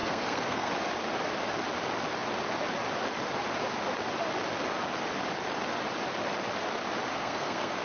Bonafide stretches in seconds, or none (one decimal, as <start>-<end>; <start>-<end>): 0.7-7.1